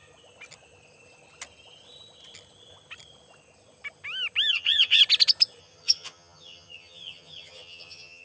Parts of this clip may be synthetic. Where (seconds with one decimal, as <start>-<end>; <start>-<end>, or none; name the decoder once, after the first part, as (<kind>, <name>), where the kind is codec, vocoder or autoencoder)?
4.5-5.0 (vocoder, HiFi-GAN); 5.6-8.2